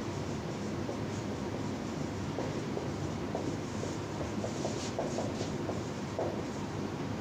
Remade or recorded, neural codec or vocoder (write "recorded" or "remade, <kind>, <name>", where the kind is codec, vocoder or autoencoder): remade, vocoder, BigVGAN v2